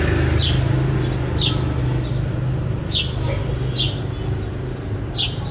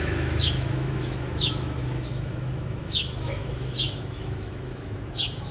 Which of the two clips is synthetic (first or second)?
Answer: second